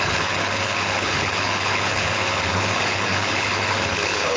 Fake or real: fake